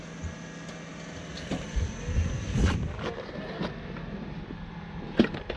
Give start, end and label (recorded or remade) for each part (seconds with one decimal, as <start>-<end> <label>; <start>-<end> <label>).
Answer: 0.0-1.3 recorded; 1.3-4.7 remade; 4.7-5.6 recorded